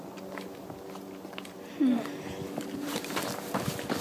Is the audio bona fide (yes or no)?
yes